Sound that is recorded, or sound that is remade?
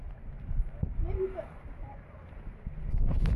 recorded